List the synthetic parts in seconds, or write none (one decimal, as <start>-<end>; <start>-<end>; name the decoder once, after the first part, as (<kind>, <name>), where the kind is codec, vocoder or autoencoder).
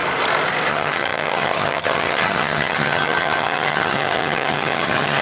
0.7-5.2 (vocoder, HiFi-GAN)